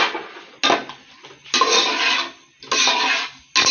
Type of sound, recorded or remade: recorded